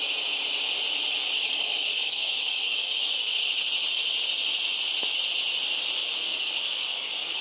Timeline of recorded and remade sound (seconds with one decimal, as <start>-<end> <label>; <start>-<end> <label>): 0.0-1.2 recorded; 1.2-3.4 remade; 3.4-6.0 recorded; 6.0-7.4 remade